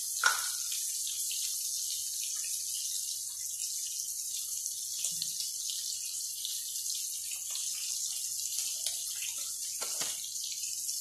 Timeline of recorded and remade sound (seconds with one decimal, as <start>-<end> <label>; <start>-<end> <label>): 0.0-11.0 recorded